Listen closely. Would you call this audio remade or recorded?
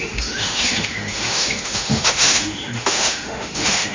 remade